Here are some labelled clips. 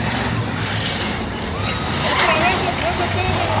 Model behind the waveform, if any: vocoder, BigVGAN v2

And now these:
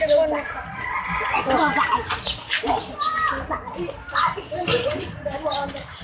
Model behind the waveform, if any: none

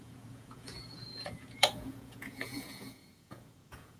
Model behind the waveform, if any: vocoder, Vocos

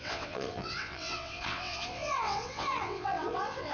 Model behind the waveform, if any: vocoder, WaveNeXt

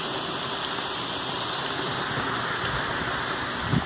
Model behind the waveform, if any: none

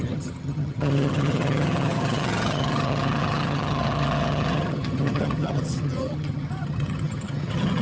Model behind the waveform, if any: vocoder, HiFi-GAN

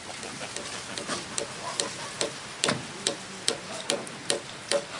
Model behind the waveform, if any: none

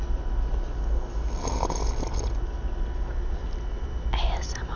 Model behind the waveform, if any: none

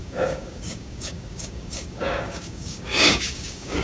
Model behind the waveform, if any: codec, DAC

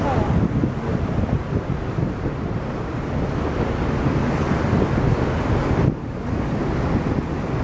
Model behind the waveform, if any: none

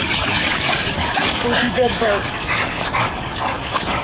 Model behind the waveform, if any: codec, DAC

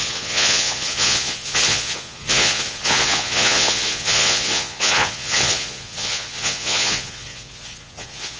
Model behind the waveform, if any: vocoder, Vocos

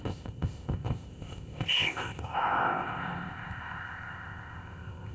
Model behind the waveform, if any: codec, ZipCodec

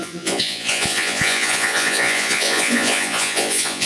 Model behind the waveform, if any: vocoder, Vocos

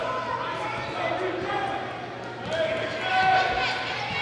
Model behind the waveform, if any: none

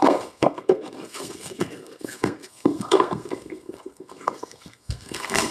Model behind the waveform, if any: codec, SNAC